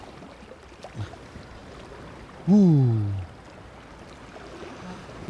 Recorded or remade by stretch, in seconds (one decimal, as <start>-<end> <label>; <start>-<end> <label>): 0.0-5.3 recorded